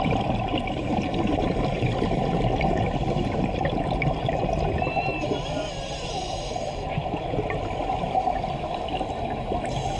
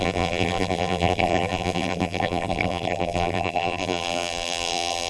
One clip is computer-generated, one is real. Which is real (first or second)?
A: first